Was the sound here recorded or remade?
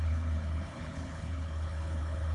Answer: remade